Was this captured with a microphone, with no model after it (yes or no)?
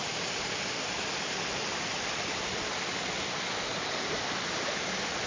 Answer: yes